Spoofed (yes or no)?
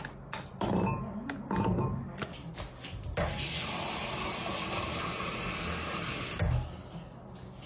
no